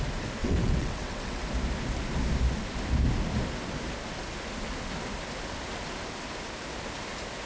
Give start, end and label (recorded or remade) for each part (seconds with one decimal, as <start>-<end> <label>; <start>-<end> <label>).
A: 0.0-0.4 recorded; 0.4-1.4 remade; 1.4-7.5 recorded